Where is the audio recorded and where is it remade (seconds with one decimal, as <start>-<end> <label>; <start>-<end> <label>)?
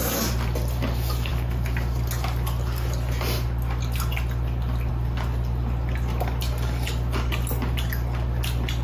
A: 0.0-8.8 recorded